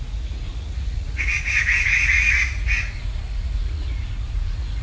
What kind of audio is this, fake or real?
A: fake